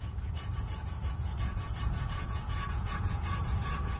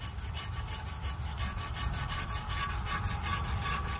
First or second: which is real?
second